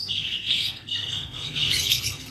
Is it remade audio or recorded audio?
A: remade